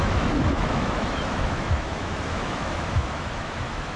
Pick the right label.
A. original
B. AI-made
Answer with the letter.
B